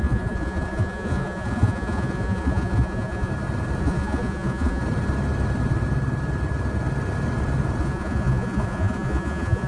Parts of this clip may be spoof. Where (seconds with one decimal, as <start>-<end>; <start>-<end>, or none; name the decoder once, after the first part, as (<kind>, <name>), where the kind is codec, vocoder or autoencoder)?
0.0-3.3 (vocoder, Vocos); 3.8-4.8; 7.8-9.7